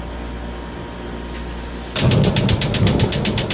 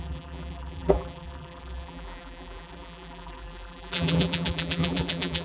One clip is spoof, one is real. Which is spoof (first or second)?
second